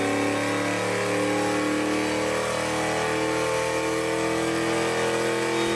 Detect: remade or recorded recorded